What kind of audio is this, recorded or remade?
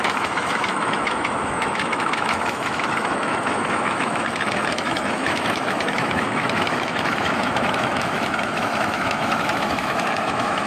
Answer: remade